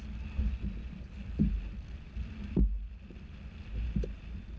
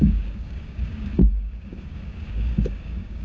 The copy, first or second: second